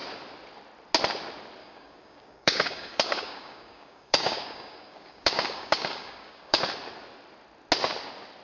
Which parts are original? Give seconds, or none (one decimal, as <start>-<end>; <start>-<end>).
0.0-1.6; 6.6-8.4